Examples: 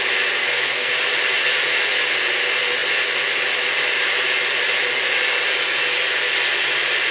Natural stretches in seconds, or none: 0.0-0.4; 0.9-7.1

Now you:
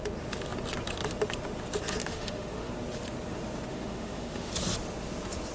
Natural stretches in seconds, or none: 0.0-2.0; 2.7-3.7; 4.5-5.5

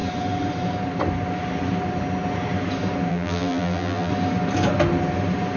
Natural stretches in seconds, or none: 0.0-3.1; 4.1-5.6

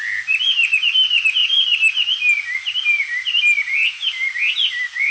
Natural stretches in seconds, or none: 0.0-5.1

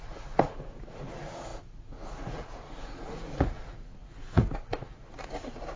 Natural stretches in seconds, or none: none

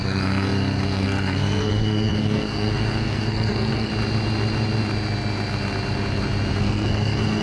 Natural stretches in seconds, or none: 3.9-6.6

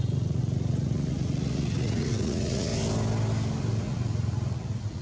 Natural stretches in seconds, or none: 2.7-3.8

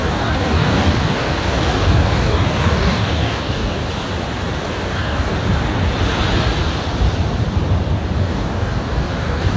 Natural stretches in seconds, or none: 3.9-4.7; 5.3-8.2